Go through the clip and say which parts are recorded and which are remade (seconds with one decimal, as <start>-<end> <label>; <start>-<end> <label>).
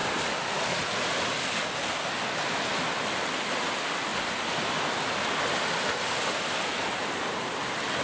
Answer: 0.0-8.0 recorded